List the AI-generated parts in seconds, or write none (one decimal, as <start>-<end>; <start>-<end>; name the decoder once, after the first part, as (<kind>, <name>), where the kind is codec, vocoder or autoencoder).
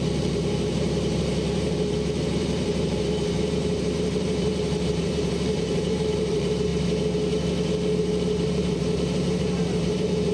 0.0-6.7 (vocoder, BigVGAN v2); 8.0-10.3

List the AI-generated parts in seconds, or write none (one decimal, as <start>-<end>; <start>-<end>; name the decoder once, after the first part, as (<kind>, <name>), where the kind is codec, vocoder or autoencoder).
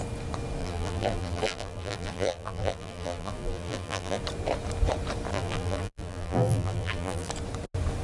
0.6-4.2 (vocoder, BigVGAN v2); 5.3-7.3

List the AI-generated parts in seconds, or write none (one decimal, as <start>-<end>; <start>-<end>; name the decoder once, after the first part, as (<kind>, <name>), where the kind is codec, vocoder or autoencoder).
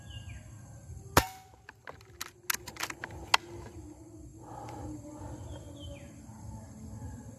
none